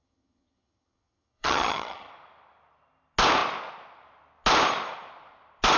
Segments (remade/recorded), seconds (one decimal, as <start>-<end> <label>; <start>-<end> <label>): 0.0-2.1 remade; 2.1-5.8 recorded